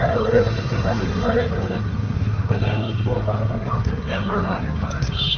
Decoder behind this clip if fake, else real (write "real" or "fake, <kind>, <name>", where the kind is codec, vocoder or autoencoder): fake, codec, SNAC